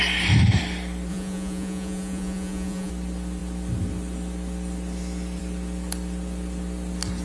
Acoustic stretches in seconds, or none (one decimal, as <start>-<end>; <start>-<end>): 0.0-1.1; 2.9-7.2